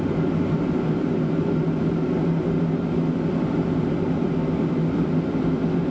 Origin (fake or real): real